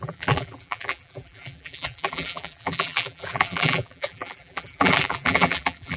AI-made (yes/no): yes